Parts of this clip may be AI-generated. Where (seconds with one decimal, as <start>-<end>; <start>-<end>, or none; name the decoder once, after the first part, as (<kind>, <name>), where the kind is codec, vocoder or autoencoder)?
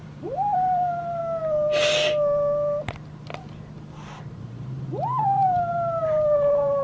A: 0.0-1.2 (vocoder, BigVGAN v2); 4.4-6.8